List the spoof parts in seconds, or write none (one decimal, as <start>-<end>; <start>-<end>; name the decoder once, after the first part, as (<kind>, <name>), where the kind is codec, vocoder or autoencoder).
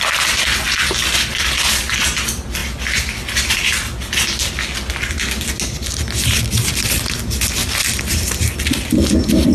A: 1.1-1.8 (vocoder, BigVGAN v2); 2.6-4.5; 7.6-8.5